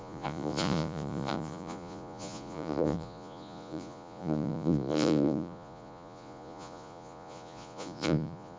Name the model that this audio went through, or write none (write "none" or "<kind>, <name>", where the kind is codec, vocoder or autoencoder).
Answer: vocoder, Vocos